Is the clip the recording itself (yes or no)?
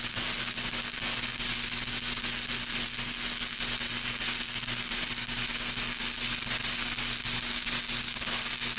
yes